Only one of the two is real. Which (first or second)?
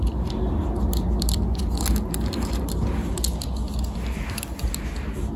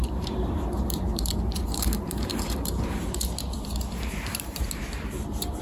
first